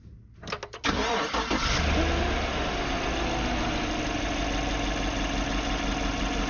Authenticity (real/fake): real